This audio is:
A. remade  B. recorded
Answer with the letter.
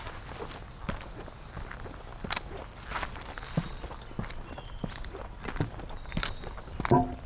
B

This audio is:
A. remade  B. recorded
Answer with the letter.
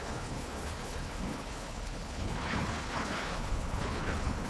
A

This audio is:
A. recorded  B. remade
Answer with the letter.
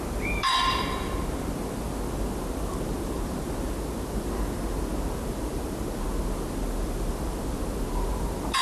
A